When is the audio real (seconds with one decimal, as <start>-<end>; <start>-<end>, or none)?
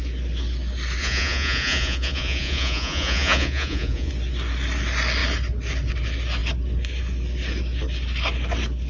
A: 0.0-1.0; 4.1-8.9